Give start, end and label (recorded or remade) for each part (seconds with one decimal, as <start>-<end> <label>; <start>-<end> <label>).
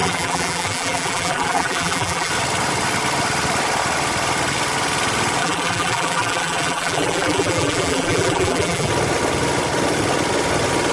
0.0-2.3 remade; 2.3-5.4 recorded; 5.4-8.9 remade; 8.9-10.9 recorded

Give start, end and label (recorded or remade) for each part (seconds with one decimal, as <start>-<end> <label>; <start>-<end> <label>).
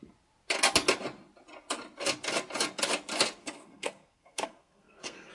0.0-3.4 recorded; 3.4-5.3 remade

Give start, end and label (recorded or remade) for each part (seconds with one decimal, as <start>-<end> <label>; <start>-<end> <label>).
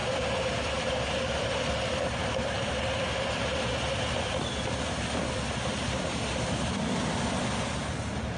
0.0-4.3 remade; 4.3-8.4 recorded